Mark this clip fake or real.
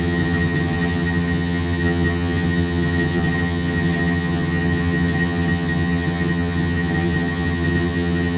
fake